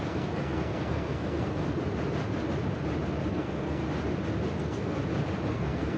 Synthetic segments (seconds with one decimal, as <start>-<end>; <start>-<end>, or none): 0.0-1.6; 3.3-3.8; 4.6-5.0; 5.5-6.0